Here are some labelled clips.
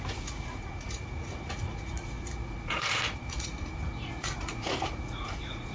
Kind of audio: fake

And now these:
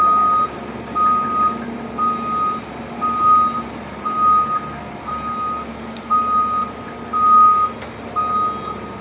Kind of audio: real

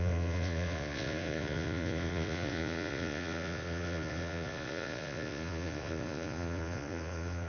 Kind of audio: fake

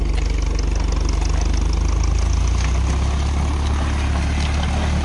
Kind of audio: real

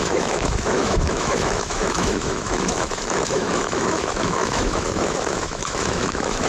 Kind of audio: fake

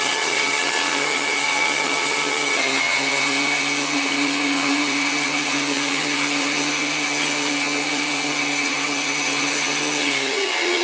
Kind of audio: fake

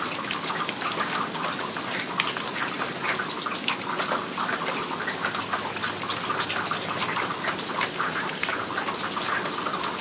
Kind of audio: real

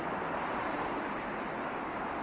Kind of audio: real